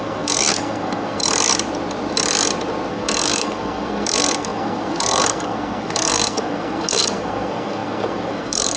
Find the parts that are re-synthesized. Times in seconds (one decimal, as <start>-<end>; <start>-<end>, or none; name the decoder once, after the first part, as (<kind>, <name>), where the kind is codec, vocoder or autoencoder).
0.0-1.2 (codec, SNAC); 2.9-8.8